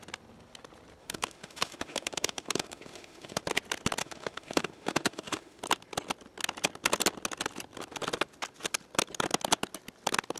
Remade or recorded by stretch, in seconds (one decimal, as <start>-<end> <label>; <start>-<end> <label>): 0.0-1.0 recorded; 1.0-3.4 remade; 3.4-4.0 recorded; 4.0-5.6 remade; 5.6-10.4 recorded